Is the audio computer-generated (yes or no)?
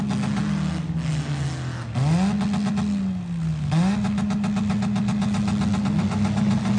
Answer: no